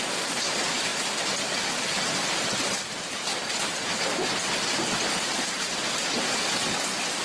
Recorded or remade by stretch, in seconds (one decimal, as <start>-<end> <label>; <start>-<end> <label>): 0.0-7.2 recorded